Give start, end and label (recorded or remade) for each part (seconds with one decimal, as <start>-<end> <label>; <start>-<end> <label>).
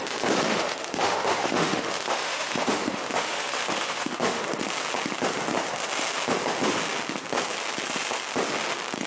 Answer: 0.0-0.5 recorded; 0.5-4.4 remade; 4.4-9.1 recorded